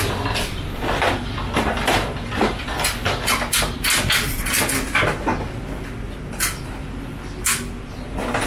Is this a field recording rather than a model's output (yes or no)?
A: yes